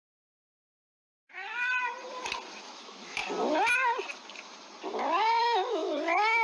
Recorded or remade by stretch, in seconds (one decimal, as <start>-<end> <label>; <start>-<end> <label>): 0.0-0.8 remade; 0.8-2.6 recorded; 2.6-3.2 remade; 3.2-5.4 recorded; 5.4-6.4 remade